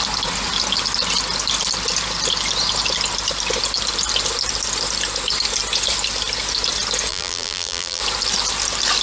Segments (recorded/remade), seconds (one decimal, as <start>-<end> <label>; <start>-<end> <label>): 0.0-7.1 recorded; 7.1-8.0 remade; 8.0-9.0 recorded